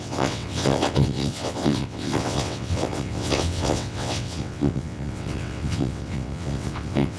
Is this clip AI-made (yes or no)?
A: yes